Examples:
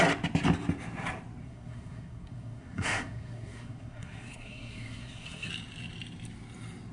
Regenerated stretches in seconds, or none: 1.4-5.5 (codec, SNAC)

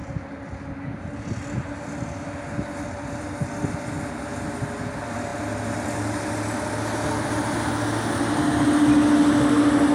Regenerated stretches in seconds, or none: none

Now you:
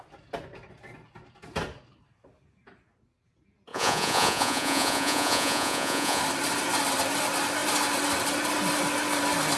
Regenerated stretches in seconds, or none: 3.7-6.2 (vocoder, Vocos)